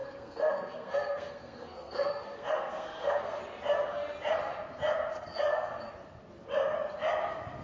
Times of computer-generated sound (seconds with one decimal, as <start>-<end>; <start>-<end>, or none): 0.0-3.4; 5.1-5.9